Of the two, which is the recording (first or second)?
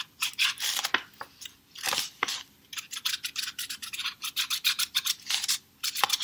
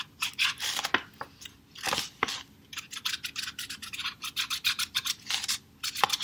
second